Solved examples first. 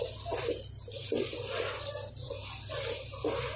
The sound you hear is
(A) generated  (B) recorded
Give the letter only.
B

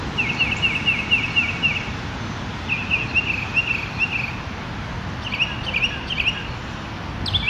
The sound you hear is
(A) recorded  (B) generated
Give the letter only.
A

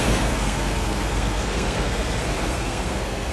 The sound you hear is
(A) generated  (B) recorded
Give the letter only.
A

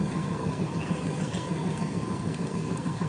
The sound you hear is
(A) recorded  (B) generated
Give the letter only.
B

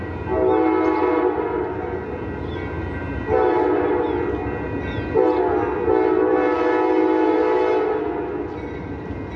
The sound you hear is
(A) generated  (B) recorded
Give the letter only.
B